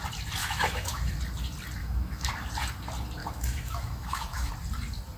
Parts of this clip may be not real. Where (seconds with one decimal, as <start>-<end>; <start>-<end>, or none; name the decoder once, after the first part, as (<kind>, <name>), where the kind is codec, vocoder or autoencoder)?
0.4-1.1 (autoencoder, DAC-VAE); 1.8-2.3; 3.2-4.5